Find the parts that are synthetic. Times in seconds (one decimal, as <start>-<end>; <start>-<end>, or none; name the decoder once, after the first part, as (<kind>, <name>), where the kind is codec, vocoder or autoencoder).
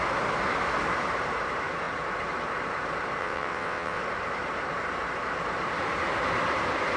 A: 3.2-4.0 (vocoder, WaveNeXt)